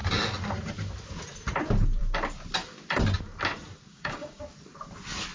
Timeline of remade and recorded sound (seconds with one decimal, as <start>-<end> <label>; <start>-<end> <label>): 0.0-3.9 recorded; 3.9-4.4 remade; 4.4-5.3 recorded